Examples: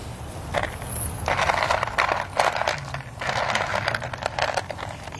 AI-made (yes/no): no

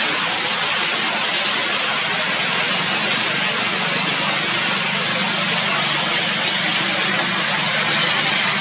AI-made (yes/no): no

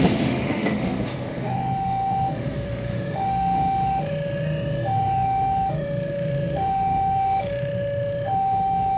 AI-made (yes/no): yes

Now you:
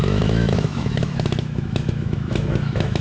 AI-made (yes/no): yes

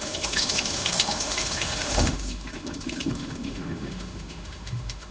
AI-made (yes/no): yes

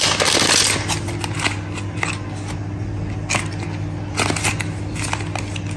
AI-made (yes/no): no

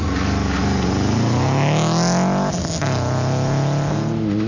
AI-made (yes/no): no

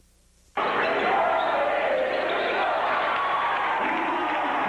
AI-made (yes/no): no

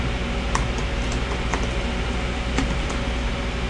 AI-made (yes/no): no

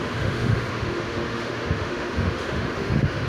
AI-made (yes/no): yes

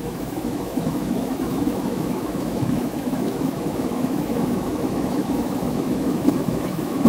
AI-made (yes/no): yes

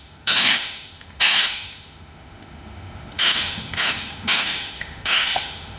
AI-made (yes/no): yes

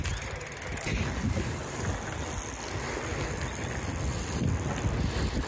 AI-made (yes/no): no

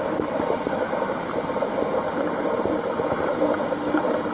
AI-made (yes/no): no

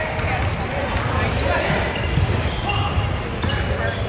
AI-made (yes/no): no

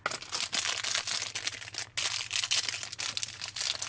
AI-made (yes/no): no